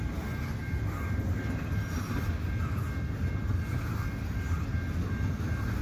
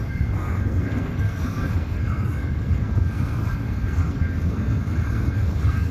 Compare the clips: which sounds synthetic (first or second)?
second